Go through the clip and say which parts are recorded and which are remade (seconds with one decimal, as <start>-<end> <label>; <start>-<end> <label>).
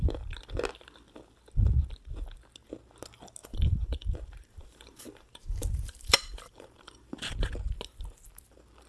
0.0-3.4 recorded; 3.4-7.5 remade; 7.5-8.9 recorded